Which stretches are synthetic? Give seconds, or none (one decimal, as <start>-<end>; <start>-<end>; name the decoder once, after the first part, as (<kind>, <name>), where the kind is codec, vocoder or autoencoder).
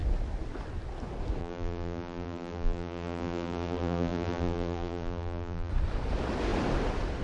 1.4-5.7 (vocoder, BigVGAN v2)